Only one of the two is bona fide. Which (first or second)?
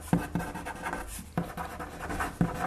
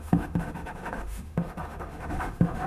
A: first